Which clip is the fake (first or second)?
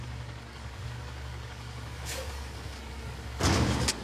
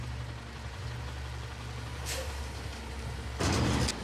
first